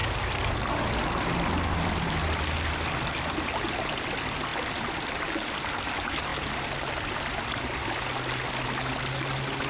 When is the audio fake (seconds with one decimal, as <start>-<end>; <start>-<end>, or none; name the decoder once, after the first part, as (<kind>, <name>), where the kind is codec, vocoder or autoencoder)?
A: none